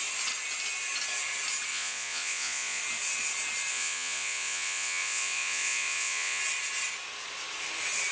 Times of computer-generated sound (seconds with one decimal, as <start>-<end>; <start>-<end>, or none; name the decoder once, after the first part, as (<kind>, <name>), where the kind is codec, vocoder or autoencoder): 1.7-2.8 (vocoder, Vocos); 3.7-6.4